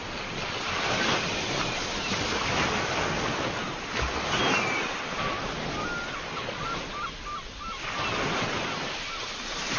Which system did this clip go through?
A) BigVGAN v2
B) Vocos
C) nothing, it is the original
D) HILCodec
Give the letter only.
C